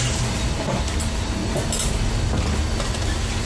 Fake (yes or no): no